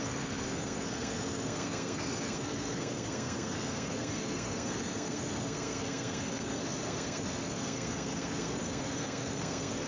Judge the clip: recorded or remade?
remade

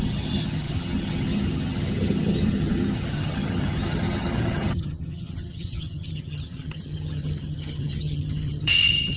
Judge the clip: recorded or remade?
remade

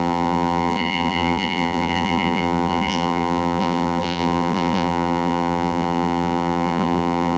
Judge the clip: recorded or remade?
remade